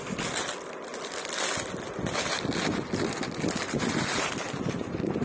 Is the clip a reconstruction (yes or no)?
no